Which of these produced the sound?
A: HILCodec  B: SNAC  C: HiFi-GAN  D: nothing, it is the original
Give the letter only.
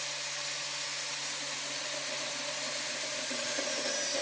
D